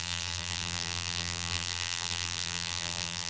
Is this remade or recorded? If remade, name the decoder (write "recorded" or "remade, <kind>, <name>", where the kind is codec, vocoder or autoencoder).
remade, vocoder, BigVGAN v2